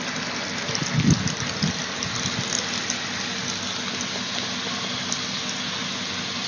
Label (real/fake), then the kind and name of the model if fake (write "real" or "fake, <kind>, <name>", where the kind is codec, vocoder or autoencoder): real